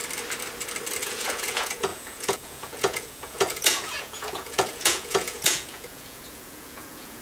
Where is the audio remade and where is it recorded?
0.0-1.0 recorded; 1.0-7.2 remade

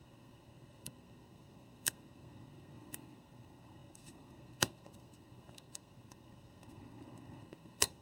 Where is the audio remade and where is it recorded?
0.0-8.0 remade

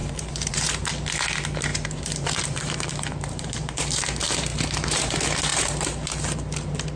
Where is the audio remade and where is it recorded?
0.0-0.9 remade; 0.9-1.7 recorded; 1.7-4.0 remade; 4.0-4.5 recorded; 4.5-5.1 remade; 5.1-5.5 recorded; 5.5-6.1 remade; 6.1-7.0 recorded

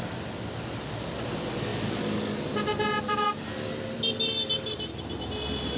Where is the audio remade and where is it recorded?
0.0-5.8 recorded

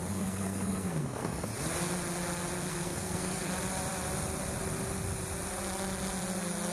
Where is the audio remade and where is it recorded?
0.0-1.5 remade; 1.5-2.7 recorded; 2.7-3.5 remade; 3.5-6.7 recorded